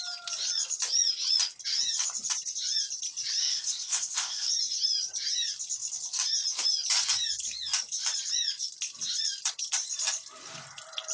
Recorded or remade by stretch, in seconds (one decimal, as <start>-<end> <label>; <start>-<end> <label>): 0.0-3.4 recorded; 3.4-4.5 remade; 4.5-11.1 recorded